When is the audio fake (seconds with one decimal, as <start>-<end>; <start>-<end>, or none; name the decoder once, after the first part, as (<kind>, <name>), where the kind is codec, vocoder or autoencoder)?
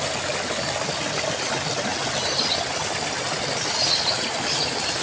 none